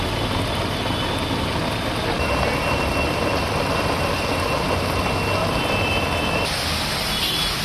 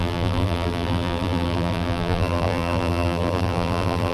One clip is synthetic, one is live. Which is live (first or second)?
first